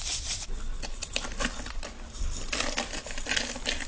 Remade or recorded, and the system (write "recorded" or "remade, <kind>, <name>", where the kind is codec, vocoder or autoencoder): recorded